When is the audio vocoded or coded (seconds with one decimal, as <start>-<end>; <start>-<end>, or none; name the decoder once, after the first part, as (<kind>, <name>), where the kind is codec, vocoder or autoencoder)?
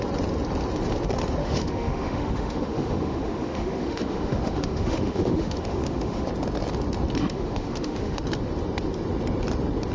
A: 1.4-6.3 (autoencoder, DAC-VAE); 7.2-8.2